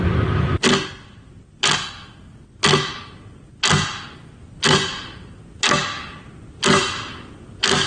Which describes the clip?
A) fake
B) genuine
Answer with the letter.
B